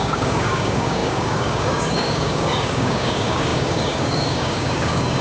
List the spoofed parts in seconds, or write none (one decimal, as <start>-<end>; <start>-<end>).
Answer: 0.0-5.2